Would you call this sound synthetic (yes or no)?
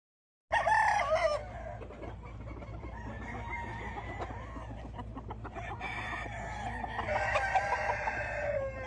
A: no